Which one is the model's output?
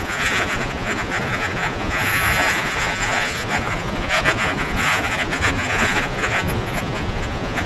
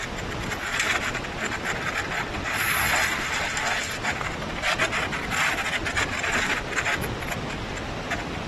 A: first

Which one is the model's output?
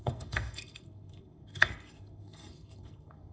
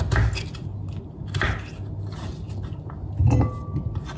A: first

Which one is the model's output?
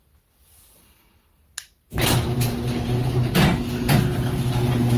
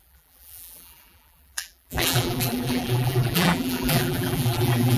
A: second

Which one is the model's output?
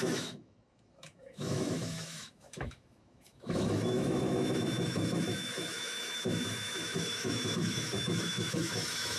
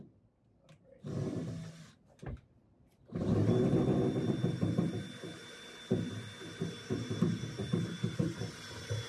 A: first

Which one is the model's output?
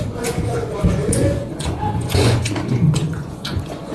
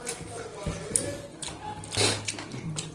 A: first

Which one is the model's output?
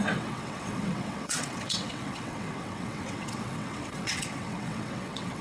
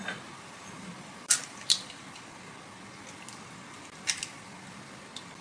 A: first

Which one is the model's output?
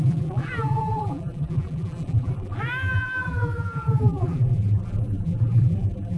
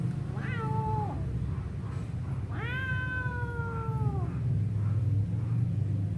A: first